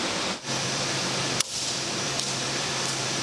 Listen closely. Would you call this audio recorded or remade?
remade